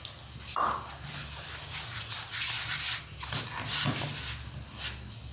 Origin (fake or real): real